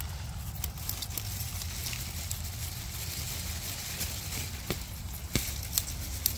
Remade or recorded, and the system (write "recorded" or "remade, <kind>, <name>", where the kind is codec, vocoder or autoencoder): recorded